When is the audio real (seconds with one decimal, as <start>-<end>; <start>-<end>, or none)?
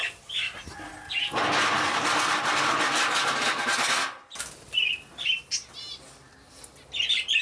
0.0-7.4